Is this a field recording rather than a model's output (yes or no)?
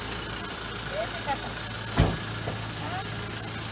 yes